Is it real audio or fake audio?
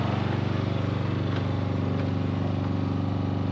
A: real